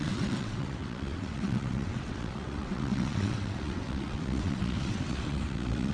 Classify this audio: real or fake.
fake